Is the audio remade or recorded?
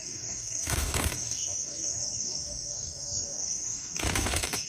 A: remade